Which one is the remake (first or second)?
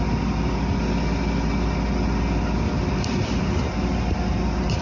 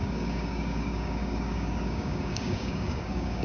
second